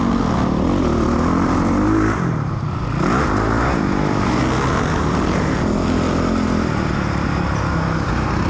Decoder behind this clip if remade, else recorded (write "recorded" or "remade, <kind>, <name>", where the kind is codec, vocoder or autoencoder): recorded